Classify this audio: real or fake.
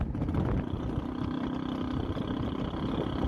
real